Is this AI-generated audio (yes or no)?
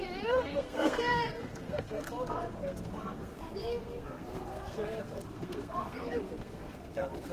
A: yes